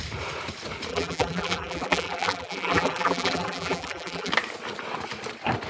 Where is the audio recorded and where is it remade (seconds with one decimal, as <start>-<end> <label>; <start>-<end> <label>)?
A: 0.0-0.9 recorded; 0.9-4.3 remade; 4.3-5.7 recorded

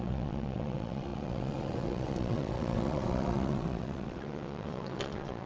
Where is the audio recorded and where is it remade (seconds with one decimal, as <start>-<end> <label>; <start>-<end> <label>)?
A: 0.0-5.5 remade

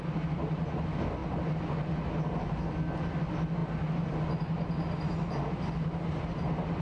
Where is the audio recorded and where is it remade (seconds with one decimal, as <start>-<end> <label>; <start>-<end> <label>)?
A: 0.0-6.8 recorded

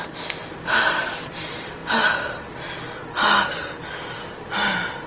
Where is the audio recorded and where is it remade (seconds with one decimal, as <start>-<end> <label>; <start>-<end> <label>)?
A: 0.0-1.8 remade; 1.8-5.1 recorded

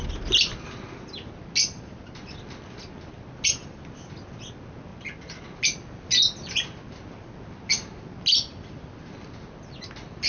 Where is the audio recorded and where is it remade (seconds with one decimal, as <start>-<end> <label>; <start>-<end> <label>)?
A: 0.0-10.3 recorded

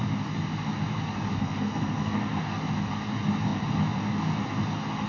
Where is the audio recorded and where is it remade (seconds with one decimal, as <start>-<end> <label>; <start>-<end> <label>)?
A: 0.0-1.4 recorded; 1.4-2.6 remade; 2.6-5.1 recorded

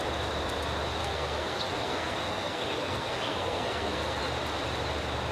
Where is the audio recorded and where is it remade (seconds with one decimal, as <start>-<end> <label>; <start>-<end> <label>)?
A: 0.0-1.0 recorded; 1.0-4.2 remade; 4.2-5.3 recorded